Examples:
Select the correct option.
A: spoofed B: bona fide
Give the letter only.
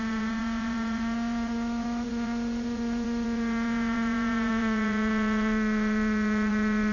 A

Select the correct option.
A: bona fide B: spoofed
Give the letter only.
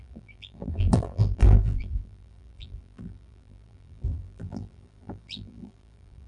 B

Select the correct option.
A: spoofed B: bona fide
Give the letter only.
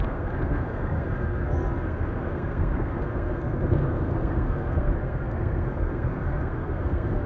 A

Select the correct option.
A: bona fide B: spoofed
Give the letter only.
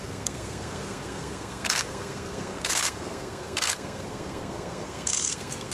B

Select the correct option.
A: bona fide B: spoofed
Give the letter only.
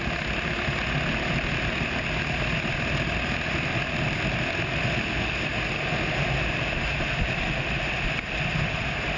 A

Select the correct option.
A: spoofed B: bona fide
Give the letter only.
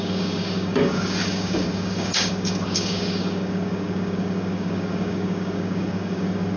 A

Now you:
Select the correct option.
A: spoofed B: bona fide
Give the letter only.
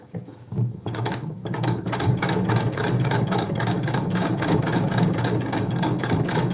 A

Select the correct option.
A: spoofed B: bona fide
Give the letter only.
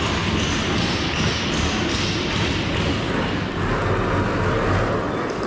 B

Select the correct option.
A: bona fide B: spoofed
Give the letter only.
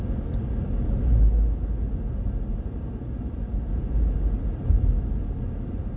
A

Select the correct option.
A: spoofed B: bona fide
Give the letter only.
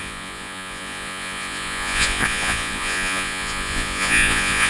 A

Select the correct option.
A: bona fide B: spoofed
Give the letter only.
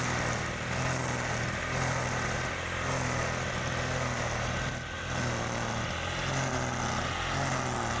A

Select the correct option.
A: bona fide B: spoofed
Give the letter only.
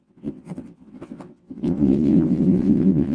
B